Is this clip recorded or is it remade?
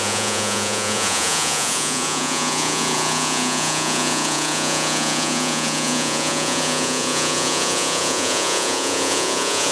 remade